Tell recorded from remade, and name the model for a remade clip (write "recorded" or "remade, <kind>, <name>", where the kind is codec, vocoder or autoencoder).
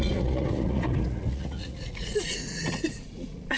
remade, vocoder, Vocos